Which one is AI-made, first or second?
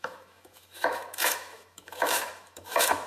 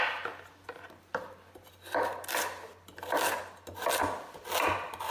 first